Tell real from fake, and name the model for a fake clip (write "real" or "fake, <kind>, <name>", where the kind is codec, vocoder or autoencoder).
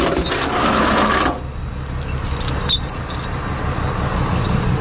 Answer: real